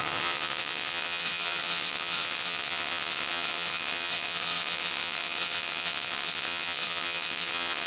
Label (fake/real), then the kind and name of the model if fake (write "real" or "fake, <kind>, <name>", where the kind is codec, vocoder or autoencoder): fake, vocoder, WaveNeXt